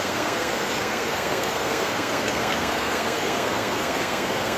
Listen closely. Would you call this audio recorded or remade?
remade